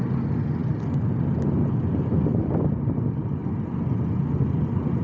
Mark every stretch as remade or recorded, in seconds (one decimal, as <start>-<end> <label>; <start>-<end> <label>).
0.0-5.0 recorded